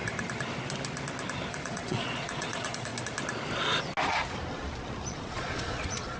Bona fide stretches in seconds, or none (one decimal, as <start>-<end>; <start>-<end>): 0.0-1.5; 2.9-5.1